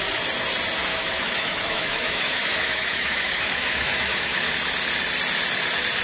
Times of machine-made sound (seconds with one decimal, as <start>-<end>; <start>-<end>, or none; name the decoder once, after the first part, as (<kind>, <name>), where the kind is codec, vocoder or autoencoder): 0.9-4.5 (autoencoder, DAC-VAE)